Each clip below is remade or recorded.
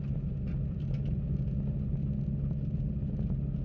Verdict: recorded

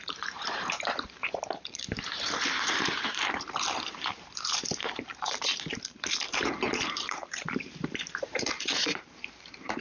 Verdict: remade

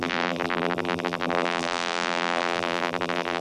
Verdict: remade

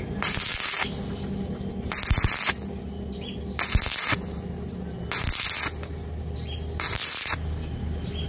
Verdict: recorded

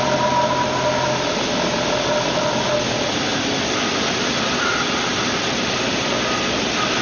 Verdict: recorded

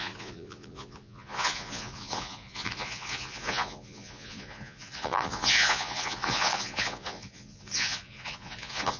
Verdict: remade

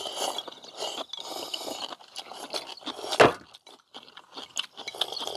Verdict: recorded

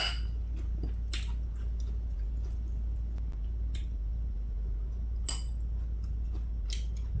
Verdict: recorded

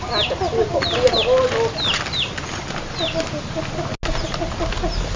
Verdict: recorded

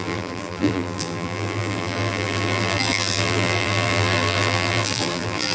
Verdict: remade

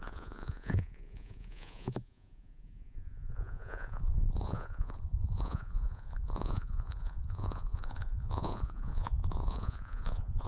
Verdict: remade